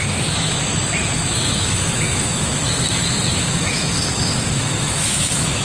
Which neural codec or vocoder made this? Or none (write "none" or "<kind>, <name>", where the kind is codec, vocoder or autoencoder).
autoencoder, DAC-VAE